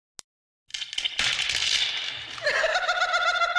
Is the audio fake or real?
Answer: real